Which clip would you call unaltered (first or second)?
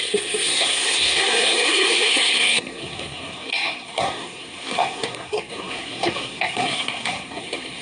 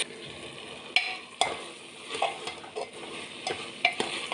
second